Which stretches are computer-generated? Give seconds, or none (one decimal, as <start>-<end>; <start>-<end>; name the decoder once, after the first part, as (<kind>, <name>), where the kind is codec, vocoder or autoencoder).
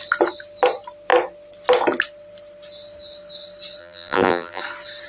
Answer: 3.8-4.6 (vocoder, BigVGAN v2)